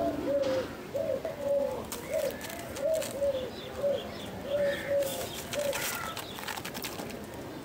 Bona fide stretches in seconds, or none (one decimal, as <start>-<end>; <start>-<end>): 0.0-7.6